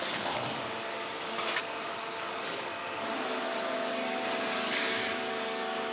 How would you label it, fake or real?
fake